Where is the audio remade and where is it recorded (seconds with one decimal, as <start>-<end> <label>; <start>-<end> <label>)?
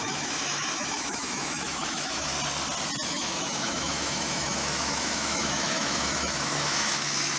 0.0-2.3 remade; 2.3-3.1 recorded; 3.1-7.4 remade